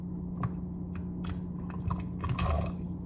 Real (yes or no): yes